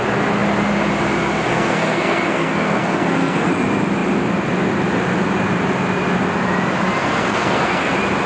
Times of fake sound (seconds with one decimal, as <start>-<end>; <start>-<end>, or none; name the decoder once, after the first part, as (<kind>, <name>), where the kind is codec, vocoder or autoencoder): 1.5-3.5 (codec, SNAC); 7.0-7.9